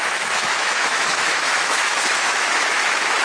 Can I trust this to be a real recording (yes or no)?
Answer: no